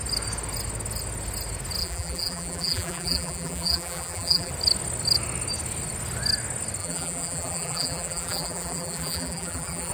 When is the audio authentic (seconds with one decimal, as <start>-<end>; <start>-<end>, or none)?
0.0-1.8; 4.5-6.8